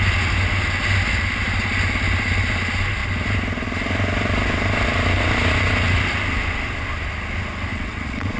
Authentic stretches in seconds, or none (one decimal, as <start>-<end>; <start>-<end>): 0.0-7.7